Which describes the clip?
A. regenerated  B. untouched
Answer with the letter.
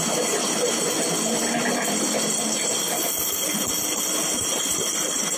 B